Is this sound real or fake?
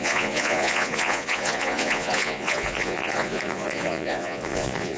fake